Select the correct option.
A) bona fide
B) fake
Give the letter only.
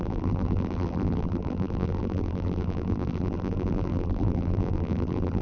B